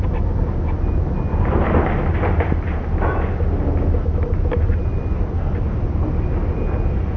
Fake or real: real